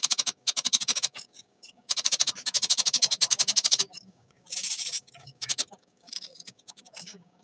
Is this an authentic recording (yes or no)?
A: no